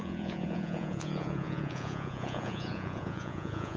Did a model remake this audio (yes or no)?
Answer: yes